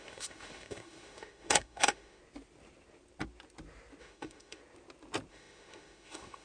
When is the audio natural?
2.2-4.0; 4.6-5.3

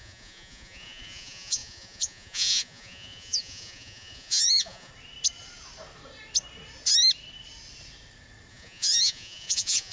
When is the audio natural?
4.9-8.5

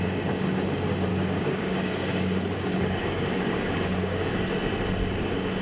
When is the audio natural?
0.0-1.1; 4.5-5.6

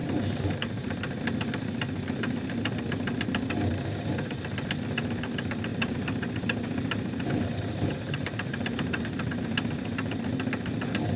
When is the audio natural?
1.2-5.7; 9.3-11.2

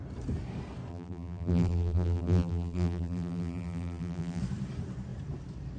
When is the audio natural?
0.0-0.9; 4.4-5.8

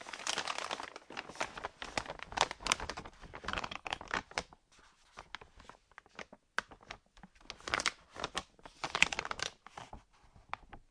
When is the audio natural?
0.0-3.5; 4.0-10.9